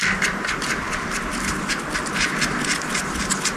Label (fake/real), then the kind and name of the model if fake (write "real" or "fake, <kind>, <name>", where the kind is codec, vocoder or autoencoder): real